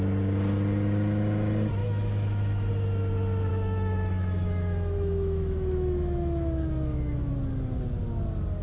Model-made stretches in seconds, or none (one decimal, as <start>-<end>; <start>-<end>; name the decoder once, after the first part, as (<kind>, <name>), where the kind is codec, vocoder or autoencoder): 1.8-2.7 (autoencoder, DAC-VAE); 3.5-7.3